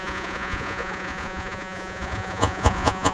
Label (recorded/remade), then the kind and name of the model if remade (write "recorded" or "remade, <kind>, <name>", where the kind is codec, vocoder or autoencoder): remade, vocoder, Vocos